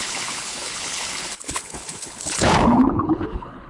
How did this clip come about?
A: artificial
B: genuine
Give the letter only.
A